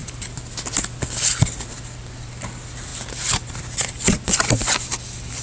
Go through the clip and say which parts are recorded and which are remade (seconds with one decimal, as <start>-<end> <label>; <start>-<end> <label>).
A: 0.0-1.0 recorded; 1.0-5.4 remade